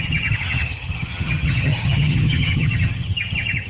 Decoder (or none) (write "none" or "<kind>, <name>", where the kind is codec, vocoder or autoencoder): vocoder, HiFi-GAN